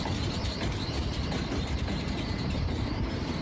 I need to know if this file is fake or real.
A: fake